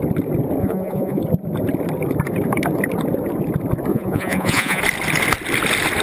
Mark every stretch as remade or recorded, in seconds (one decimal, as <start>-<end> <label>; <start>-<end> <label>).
0.0-0.6 recorded; 0.6-1.2 remade; 1.2-3.9 recorded; 3.9-4.8 remade; 4.8-6.0 recorded